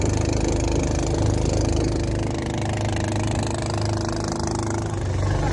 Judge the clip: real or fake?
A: real